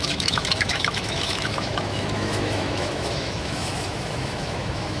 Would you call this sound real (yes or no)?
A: no